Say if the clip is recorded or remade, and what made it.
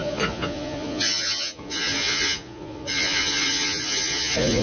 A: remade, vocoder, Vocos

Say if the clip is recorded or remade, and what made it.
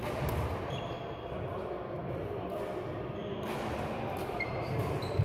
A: recorded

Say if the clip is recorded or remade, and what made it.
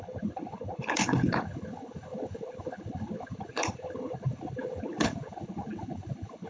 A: remade, codec, HILCodec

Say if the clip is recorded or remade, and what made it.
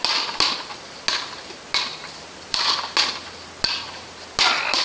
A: recorded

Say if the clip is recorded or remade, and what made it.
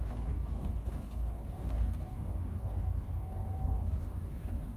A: remade, codec, DAC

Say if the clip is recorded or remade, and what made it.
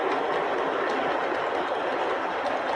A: recorded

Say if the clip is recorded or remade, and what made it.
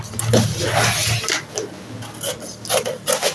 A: recorded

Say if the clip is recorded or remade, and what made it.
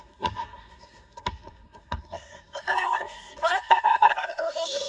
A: remade, codec, SNAC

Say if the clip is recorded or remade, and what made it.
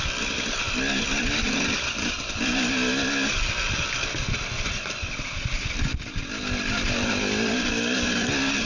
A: recorded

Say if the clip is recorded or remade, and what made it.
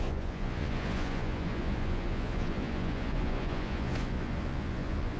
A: remade, vocoder, Vocos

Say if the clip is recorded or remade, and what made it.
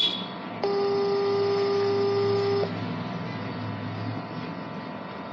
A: recorded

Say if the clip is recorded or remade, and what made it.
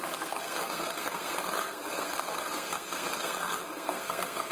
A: remade, codec, SNAC